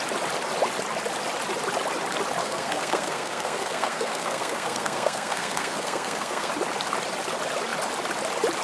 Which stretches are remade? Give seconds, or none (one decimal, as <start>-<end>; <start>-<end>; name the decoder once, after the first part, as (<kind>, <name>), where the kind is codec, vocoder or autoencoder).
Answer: 2.4-6.5 (codec, SNAC)